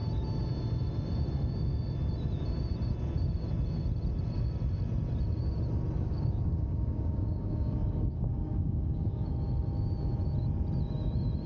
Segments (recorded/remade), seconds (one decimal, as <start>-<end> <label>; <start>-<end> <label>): 0.0-6.0 recorded; 6.0-9.3 remade; 9.3-11.5 recorded